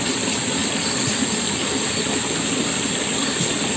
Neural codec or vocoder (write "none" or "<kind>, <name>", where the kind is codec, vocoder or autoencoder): none